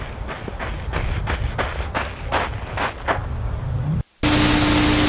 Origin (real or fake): real